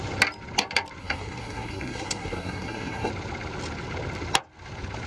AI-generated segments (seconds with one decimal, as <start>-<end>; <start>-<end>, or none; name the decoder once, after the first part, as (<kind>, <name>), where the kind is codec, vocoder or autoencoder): 1.0-3.1 (codec, SNAC)